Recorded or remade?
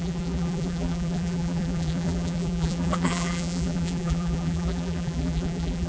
remade